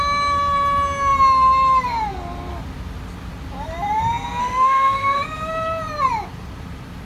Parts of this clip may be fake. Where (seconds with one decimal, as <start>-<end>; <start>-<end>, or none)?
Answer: 4.4-5.2